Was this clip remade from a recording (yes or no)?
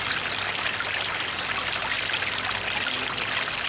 no